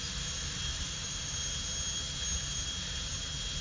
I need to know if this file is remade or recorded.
recorded